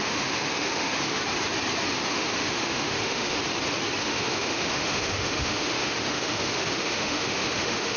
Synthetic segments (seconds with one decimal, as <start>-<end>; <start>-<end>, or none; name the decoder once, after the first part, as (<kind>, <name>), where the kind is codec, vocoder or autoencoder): 0.0-1.2 (autoencoder, DAC-VAE); 2.1-3.4; 4.0-8.0